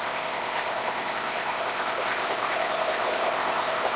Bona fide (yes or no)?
no